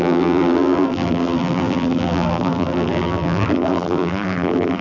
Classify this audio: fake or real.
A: fake